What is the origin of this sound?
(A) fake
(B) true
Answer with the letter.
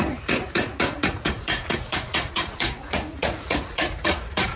A